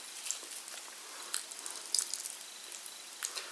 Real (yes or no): yes